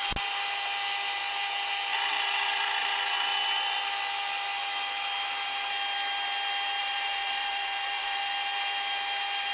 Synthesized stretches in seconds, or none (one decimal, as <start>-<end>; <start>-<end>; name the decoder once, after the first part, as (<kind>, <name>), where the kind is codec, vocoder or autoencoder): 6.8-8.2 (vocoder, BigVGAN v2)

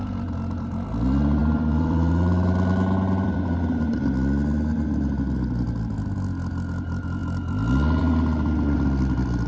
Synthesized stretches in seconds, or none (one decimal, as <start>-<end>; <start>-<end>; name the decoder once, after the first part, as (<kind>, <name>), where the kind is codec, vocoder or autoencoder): 1.4-4.0 (vocoder, BigVGAN v2)

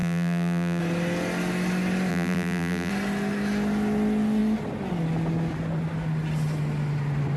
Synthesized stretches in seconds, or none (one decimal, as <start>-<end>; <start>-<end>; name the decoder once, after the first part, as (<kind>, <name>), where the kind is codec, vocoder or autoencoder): 0.0-0.8 (vocoder, BigVGAN v2); 2.1-2.9

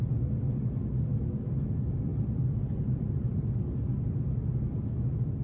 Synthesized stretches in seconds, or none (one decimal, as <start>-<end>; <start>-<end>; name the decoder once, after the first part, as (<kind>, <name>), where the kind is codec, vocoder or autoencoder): 2.1-3.6 (vocoder, BigVGAN v2)